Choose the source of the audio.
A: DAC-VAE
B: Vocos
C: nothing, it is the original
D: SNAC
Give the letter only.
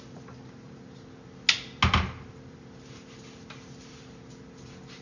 C